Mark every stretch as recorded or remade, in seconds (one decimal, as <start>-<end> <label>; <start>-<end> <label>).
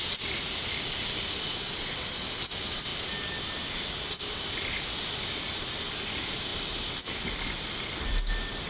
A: 0.0-8.7 recorded